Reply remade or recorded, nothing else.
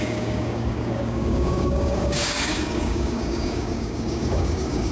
remade